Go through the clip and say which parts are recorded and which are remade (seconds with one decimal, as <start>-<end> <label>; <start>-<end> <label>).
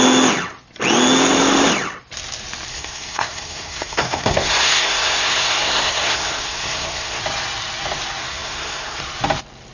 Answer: 0.0-2.7 recorded; 2.7-7.2 remade; 7.2-8.2 recorded; 8.2-9.0 remade; 9.0-9.7 recorded